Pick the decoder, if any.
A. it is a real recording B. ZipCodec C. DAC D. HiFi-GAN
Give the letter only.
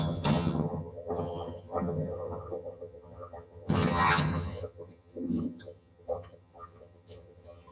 D